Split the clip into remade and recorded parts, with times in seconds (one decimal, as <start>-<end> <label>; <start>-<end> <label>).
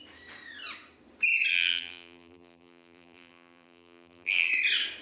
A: 0.0-1.5 recorded; 1.5-4.5 remade; 4.5-5.0 recorded